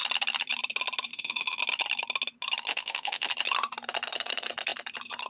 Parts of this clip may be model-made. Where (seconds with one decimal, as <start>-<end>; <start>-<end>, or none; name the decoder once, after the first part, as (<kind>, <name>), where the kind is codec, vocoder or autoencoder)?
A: 1.1-1.6 (autoencoder, DAC-VAE); 2.7-3.3